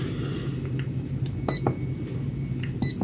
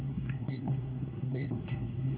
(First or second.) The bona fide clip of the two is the first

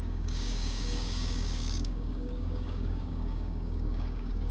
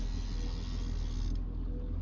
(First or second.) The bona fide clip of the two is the second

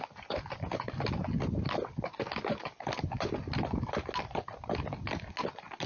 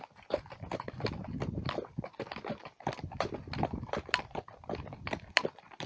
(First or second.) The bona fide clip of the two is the first